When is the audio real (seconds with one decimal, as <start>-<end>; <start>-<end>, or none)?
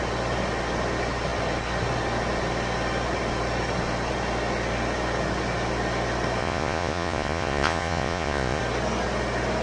0.0-6.4; 8.6-9.6